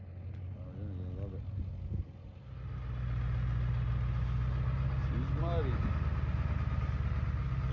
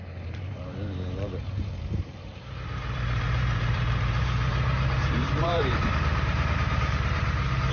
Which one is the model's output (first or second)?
second